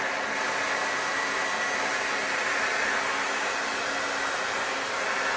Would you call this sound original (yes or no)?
yes